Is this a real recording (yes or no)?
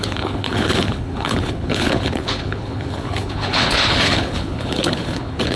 no